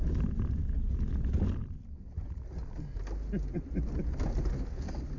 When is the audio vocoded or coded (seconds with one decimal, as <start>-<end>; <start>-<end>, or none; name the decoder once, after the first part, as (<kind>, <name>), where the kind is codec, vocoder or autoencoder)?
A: none